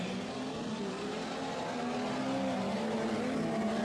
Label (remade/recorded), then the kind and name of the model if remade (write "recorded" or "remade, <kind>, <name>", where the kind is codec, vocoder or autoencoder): recorded